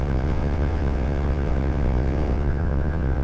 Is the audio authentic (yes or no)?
no